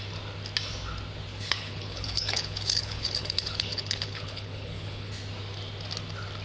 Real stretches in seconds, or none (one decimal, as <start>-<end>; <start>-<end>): 0.0-1.3; 5.1-6.4